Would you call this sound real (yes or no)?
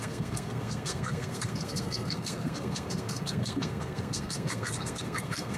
no